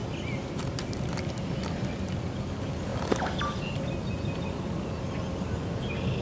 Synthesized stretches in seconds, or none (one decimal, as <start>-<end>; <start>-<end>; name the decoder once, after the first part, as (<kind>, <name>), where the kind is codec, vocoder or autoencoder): none